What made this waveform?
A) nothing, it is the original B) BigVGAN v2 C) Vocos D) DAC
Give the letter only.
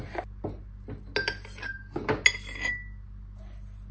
A